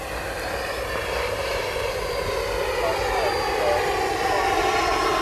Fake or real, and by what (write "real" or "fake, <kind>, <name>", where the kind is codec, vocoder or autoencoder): real